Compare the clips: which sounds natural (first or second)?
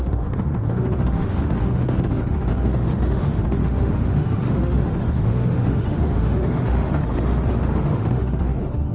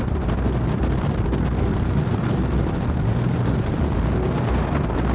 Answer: second